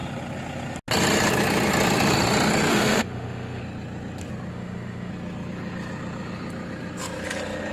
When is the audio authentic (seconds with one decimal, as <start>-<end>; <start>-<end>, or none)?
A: 0.0-2.7; 3.6-4.5; 5.1-7.7